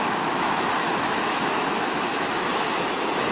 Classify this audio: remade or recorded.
remade